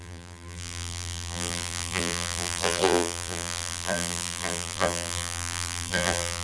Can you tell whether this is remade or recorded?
remade